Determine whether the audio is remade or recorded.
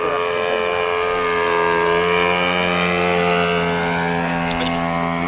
recorded